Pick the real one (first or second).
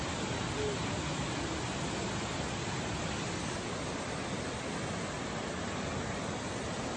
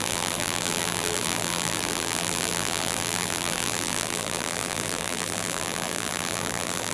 first